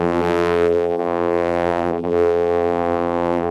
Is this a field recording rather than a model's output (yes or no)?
no